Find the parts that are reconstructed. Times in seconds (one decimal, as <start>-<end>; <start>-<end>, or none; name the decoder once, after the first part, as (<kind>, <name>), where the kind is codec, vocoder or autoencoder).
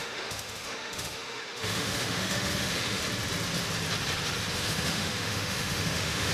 0.0-3.0 (autoencoder, DAC-VAE); 4.5-6.3